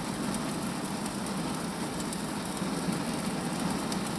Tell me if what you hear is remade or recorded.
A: recorded